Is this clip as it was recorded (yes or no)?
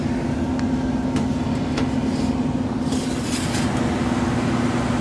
yes